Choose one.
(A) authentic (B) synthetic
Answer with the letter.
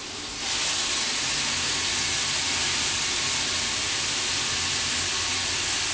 A